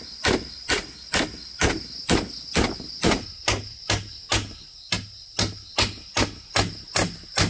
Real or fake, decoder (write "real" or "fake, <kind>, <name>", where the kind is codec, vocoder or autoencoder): real